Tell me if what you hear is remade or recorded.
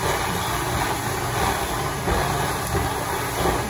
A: recorded